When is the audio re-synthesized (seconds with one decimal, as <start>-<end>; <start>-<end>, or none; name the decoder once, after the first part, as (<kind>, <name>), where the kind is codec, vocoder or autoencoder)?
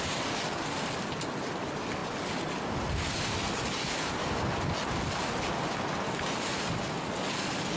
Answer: none